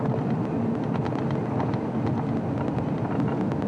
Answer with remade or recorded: recorded